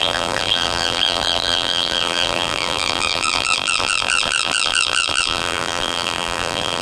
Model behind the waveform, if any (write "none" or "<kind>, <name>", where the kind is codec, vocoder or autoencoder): vocoder, BigVGAN v2